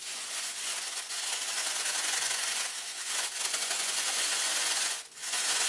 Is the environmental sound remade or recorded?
remade